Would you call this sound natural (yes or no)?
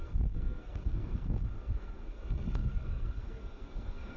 no